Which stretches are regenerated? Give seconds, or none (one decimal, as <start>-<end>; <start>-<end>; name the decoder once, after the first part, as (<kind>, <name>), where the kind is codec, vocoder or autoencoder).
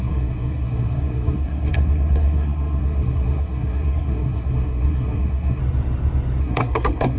0.0-5.6 (codec, SNAC); 6.4-7.2